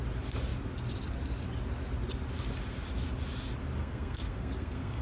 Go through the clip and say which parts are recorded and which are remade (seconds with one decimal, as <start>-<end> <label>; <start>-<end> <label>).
0.0-3.8 recorded; 3.8-5.0 remade